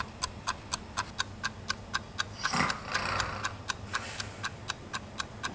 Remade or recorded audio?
recorded